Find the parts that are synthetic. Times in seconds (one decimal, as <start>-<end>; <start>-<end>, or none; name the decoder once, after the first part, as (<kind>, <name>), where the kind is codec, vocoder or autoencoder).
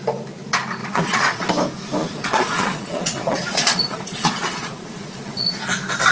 0.8-1.5 (vocoder, Vocos); 2.0-5.6